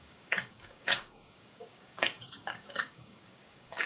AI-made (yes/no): yes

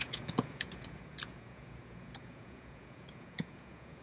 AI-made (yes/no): yes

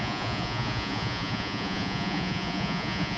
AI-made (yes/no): yes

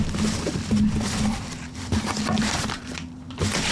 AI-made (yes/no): yes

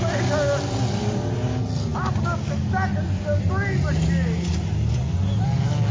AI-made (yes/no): no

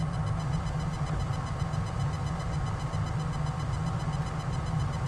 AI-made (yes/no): no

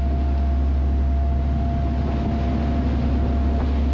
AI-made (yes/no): no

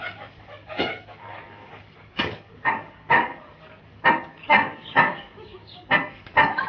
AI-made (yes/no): yes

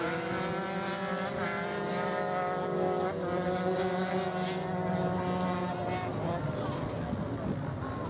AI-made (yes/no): no